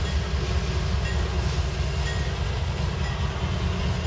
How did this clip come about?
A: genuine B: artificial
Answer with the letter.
A